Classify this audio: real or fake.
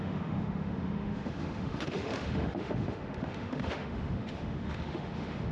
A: fake